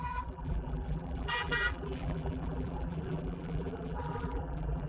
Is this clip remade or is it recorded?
remade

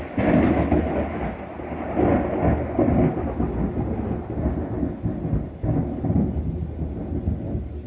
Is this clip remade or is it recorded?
recorded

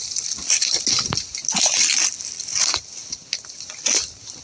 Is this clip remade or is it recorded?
recorded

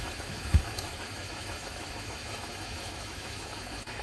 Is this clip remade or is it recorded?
remade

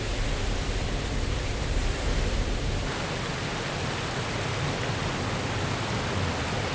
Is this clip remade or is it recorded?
recorded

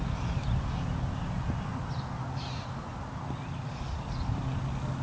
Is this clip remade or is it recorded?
recorded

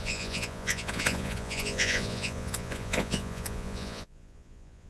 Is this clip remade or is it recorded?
remade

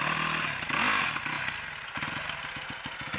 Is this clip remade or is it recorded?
recorded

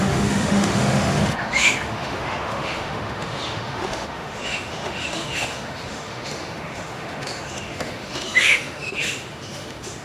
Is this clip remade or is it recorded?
remade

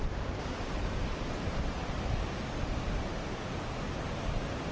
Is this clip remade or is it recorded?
recorded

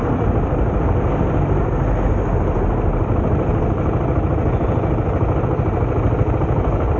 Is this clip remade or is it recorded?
remade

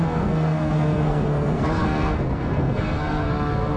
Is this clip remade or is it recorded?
remade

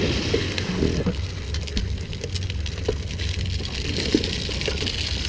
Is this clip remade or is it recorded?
recorded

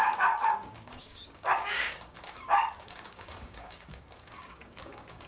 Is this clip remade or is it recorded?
remade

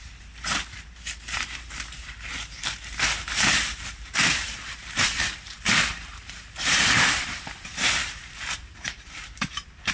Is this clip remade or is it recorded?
remade